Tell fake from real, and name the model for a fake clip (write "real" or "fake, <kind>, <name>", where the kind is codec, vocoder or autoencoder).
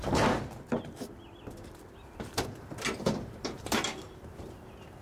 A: fake, vocoder, BigVGAN v2